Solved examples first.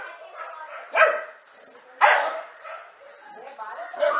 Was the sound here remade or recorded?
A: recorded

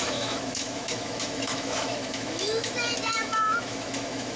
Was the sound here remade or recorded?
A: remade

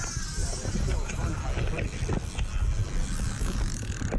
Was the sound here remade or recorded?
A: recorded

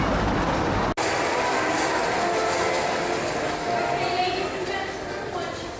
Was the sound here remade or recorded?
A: recorded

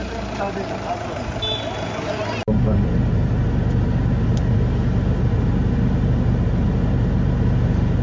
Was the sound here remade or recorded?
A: recorded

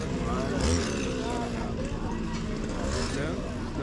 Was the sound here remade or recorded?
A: recorded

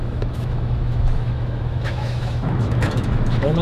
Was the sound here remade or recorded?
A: remade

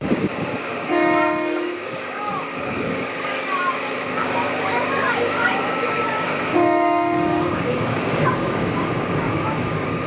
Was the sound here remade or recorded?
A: remade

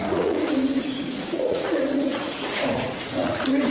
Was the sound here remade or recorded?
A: remade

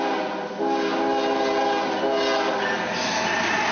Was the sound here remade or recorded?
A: recorded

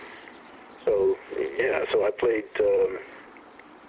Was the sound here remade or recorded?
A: remade